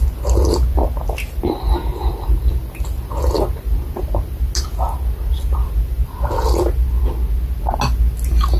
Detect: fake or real real